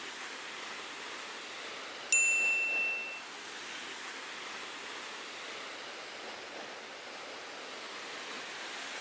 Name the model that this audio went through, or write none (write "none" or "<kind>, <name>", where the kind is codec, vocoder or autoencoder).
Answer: none